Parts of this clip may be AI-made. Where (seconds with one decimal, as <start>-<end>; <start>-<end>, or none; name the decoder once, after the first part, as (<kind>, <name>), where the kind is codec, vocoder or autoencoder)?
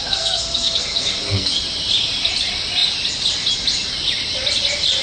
0.0-1.6 (codec, SNAC)